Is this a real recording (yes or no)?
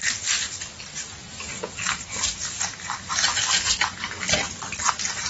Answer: yes